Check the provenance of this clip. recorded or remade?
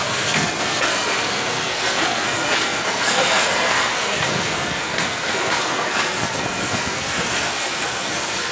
remade